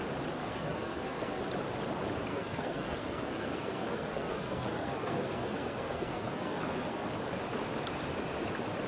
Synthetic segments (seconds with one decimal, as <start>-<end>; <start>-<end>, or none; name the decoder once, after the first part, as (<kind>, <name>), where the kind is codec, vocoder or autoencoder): 0.4-1.4 (codec, SNAC); 2.3-7.1